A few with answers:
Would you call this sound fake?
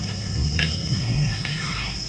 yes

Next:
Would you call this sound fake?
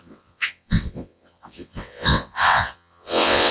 yes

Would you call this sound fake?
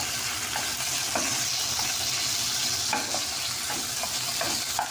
no